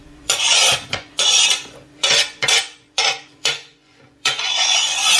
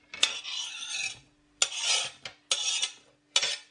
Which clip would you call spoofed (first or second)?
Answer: first